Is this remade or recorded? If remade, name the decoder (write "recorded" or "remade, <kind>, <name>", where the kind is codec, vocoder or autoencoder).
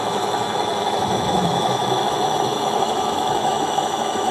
remade, autoencoder, DAC-VAE